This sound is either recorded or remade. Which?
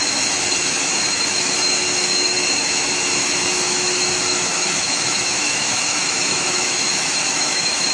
remade